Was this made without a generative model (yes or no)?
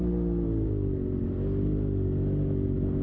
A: yes